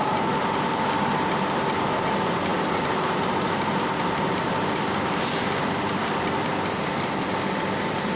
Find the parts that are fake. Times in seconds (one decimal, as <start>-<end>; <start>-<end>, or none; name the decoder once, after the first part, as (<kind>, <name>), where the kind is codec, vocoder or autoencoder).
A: 2.5-5.8 (vocoder, BigVGAN v2)